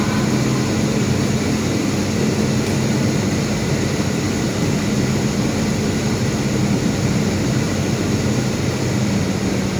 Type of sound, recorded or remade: recorded